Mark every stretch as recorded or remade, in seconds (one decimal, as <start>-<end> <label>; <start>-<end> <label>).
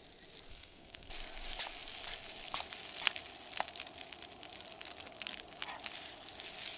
0.0-0.5 recorded; 0.5-1.1 remade; 1.1-6.8 recorded